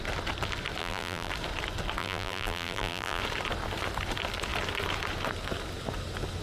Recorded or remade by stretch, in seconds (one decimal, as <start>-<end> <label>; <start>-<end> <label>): 0.0-0.8 recorded; 0.8-1.3 remade; 1.3-2.0 recorded; 2.0-3.2 remade; 3.2-6.4 recorded